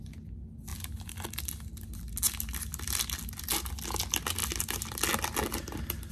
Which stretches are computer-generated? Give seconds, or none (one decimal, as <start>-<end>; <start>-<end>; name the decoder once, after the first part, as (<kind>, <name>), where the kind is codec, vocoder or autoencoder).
none